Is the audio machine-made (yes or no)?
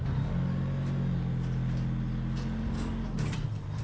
no